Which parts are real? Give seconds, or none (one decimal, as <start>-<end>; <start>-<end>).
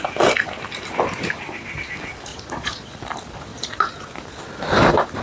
0.0-2.3; 2.9-3.5; 4.1-5.2